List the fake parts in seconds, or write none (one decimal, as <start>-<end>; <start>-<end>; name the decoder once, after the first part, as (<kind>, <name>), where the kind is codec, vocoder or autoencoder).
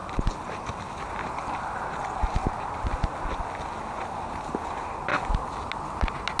none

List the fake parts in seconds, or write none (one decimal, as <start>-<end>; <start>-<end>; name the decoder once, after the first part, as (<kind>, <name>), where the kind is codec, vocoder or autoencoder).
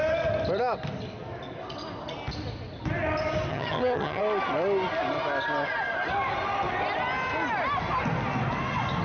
3.5-4.2 (vocoder, HiFi-GAN)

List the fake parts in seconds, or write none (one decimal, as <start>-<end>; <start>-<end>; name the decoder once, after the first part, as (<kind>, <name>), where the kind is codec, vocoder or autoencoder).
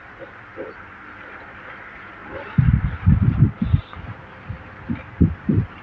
2.2-4.8 (vocoder, BigVGAN v2)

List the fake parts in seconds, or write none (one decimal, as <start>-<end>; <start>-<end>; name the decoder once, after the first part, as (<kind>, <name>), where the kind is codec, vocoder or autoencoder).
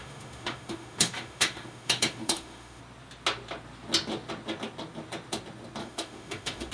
0.0-2.8 (autoencoder, DAC-VAE); 5.8-6.7